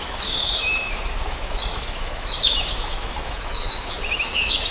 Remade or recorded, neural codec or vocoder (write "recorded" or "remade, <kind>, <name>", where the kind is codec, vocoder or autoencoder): remade, autoencoder, DAC-VAE